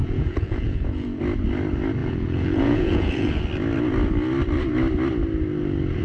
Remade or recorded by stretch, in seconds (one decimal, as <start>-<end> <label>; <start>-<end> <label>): 0.0-1.2 remade; 1.2-2.0 recorded; 2.0-3.4 remade; 3.4-6.0 recorded